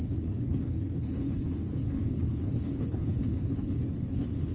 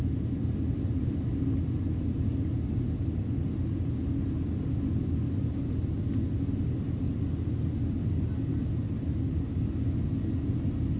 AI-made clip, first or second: first